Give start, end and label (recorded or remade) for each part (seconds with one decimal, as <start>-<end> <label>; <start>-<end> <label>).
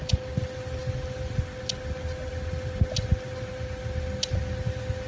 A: 0.0-5.1 recorded